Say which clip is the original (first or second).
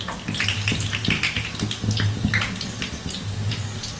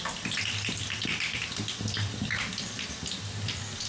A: first